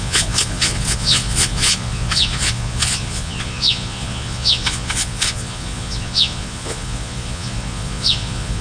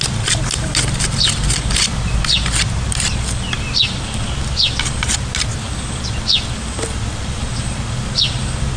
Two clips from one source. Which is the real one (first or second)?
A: second